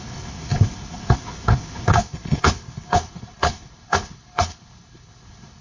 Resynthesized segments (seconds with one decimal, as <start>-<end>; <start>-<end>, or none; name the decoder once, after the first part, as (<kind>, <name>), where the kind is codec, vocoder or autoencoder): 0.0-5.6 (codec, HILCodec)